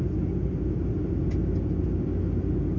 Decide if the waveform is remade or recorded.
recorded